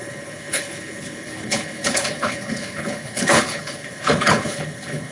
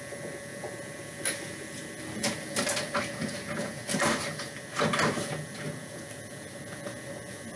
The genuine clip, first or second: second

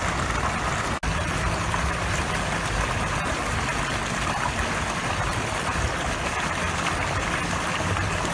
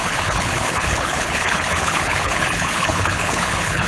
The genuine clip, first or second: first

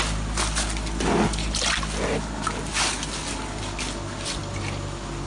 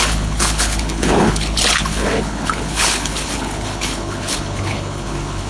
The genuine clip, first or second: first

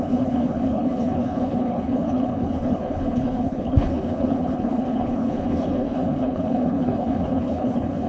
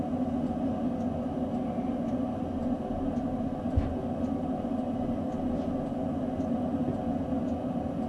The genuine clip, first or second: second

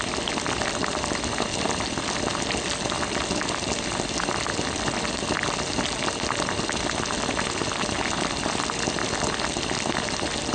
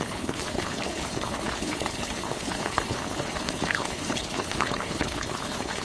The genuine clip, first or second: first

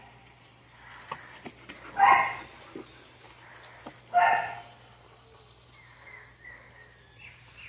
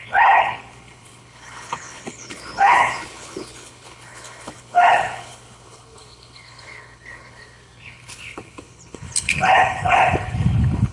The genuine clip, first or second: first